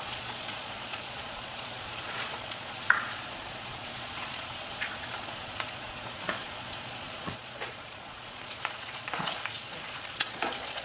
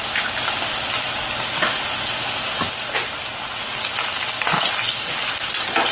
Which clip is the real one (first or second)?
second